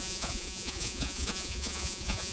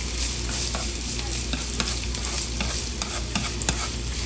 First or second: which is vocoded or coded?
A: first